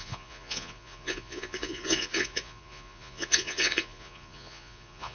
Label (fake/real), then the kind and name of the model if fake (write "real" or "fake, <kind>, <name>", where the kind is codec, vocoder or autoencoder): fake, vocoder, Vocos